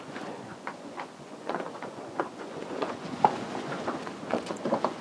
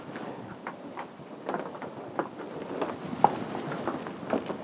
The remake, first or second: first